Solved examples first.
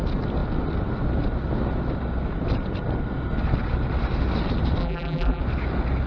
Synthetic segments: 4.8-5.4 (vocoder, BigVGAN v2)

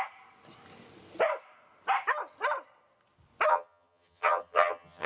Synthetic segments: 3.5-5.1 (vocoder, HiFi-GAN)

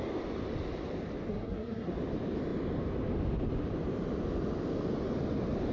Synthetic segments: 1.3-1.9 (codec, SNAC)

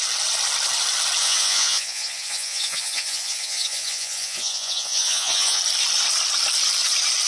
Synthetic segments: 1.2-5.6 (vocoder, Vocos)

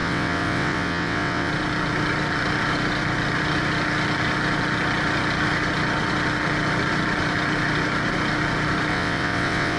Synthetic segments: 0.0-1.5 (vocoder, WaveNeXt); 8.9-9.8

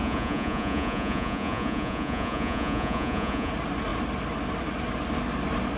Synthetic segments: 0.0-3.5 (vocoder, Vocos)

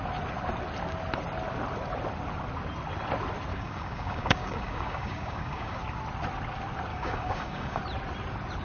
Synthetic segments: 3.5-5.8 (codec, DAC); 6.9-7.8

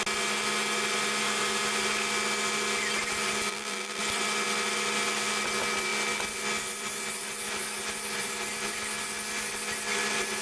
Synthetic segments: 3.5-4.0 (vocoder, BigVGAN v2)